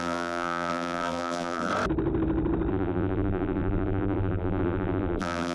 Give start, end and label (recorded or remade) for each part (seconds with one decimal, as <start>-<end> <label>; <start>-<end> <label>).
0.0-1.7 remade; 1.7-2.7 recorded; 2.7-5.5 remade

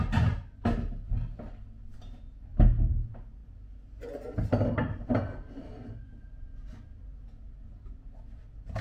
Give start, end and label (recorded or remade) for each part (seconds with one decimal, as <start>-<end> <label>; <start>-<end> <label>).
0.0-8.8 recorded

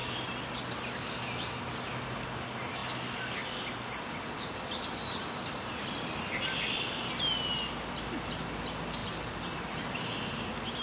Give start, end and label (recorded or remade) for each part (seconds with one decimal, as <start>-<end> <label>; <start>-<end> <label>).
0.0-10.8 recorded

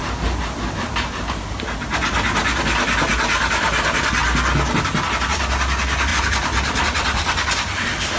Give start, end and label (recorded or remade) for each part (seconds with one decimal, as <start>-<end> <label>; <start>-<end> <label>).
0.0-1.1 remade; 1.1-6.1 recorded; 6.1-8.2 remade

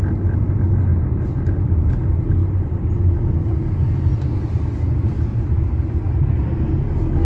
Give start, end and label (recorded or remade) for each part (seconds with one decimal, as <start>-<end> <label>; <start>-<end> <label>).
0.0-0.9 recorded; 0.9-1.9 remade; 1.9-2.4 recorded; 2.4-3.1 remade; 3.1-5.3 recorded; 5.3-6.4 remade; 6.4-7.2 recorded

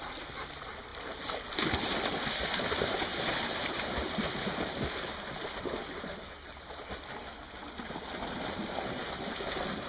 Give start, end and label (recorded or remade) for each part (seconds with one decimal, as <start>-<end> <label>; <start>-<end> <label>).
0.0-3.1 recorded; 3.1-5.9 remade; 5.9-9.9 recorded